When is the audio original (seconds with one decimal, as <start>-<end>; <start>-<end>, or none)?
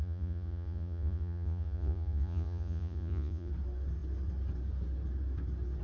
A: 3.5-5.8